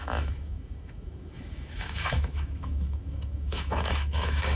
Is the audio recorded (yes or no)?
no